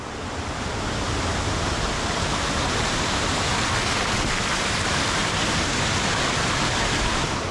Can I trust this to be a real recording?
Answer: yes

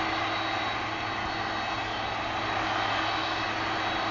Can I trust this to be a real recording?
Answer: yes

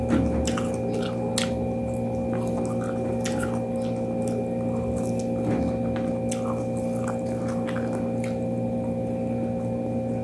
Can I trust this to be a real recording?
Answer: yes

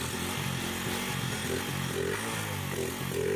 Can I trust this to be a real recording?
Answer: yes